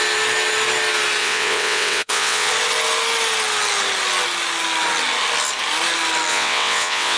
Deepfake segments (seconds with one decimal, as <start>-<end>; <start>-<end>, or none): 1.2-2.5; 6.3-7.2